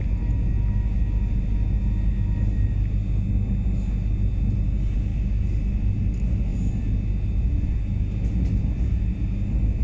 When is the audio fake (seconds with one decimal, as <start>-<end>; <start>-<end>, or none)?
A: none